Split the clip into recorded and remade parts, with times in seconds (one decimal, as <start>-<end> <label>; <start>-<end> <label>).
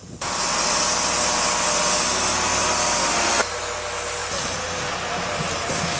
0.0-6.0 recorded